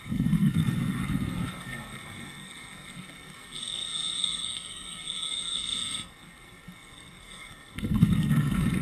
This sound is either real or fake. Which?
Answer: fake